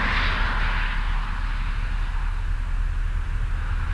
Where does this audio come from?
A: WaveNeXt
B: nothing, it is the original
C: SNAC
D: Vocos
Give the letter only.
B